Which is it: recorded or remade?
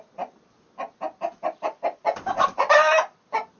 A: recorded